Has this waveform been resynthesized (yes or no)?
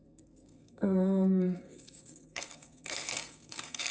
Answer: yes